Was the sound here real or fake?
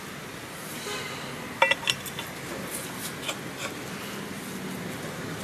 real